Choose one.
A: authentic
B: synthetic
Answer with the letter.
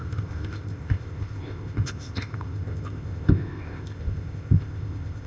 B